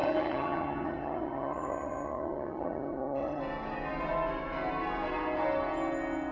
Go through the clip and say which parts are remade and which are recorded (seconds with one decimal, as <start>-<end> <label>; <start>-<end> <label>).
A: 0.0-3.4 remade; 3.4-6.3 recorded